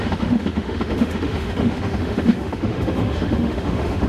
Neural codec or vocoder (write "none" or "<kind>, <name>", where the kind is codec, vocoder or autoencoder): autoencoder, DAC-VAE